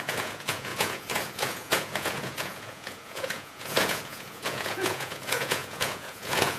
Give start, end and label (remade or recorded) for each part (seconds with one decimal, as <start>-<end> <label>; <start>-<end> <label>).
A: 0.0-6.6 remade